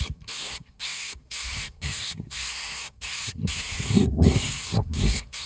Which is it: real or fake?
fake